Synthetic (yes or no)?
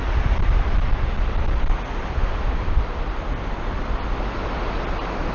no